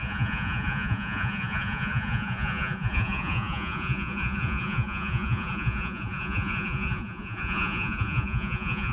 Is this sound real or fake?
fake